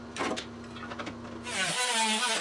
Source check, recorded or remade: recorded